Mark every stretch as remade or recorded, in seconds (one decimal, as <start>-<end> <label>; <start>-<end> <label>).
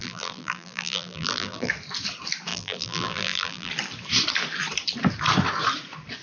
0.0-1.7 remade; 1.7-2.5 recorded; 2.5-3.7 remade; 3.7-6.2 recorded